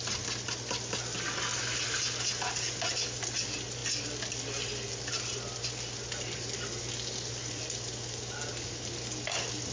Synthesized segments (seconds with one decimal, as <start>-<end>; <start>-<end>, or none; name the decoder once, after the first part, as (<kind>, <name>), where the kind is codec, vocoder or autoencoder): none